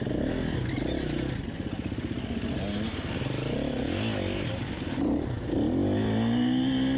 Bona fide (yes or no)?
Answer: yes